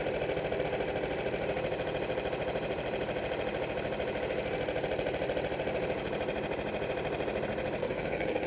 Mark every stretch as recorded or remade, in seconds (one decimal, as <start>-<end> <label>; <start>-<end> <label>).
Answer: 0.0-7.8 recorded; 7.8-8.5 remade